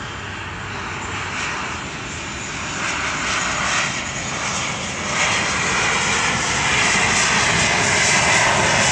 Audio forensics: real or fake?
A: real